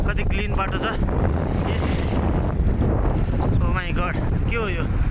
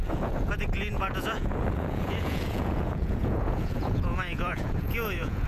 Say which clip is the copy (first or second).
second